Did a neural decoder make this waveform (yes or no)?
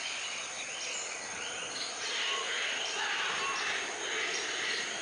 no